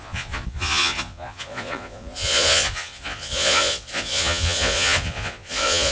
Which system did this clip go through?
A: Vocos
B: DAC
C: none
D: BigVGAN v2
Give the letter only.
A